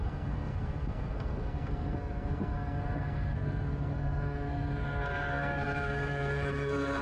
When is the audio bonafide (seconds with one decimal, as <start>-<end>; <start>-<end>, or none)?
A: none